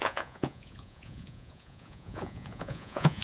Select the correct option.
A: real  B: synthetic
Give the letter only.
B